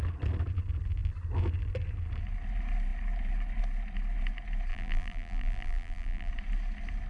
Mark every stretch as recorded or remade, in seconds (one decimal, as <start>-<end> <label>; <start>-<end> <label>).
0.0-4.7 recorded; 4.7-6.3 remade; 6.3-7.1 recorded